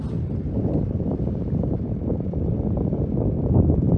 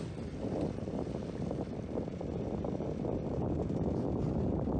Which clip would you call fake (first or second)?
first